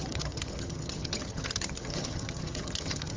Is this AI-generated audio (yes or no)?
yes